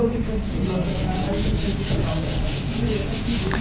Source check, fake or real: fake